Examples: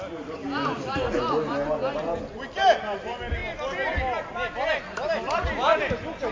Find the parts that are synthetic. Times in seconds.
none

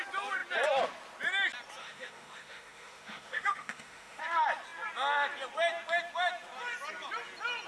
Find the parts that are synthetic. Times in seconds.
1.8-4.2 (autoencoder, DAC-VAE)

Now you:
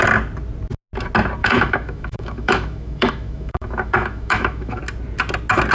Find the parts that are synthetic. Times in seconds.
1.4-4.8 (autoencoder, DAC-VAE)